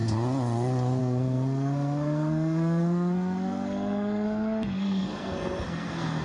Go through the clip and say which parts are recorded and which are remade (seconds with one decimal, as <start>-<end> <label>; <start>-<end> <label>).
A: 0.0-1.0 recorded; 1.0-6.2 remade